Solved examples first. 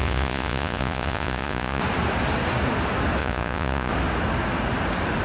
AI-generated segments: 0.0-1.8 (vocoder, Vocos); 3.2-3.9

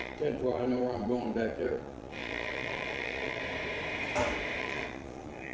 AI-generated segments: 0.0-3.4 (vocoder, Vocos); 4.6-5.5